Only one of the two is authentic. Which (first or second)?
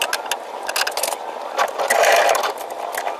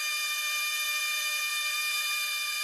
first